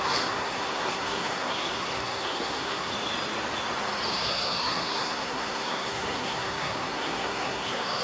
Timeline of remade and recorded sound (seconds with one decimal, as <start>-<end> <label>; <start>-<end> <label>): 0.0-2.9 remade; 2.9-4.1 recorded; 4.1-8.0 remade